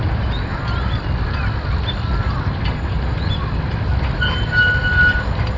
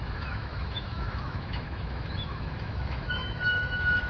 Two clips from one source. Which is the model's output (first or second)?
second